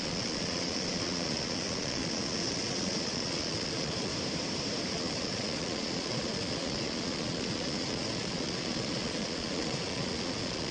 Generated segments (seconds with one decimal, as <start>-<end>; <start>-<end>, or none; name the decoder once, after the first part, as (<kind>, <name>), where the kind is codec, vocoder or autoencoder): 0.0-4.1 (vocoder, Vocos); 4.9-10.7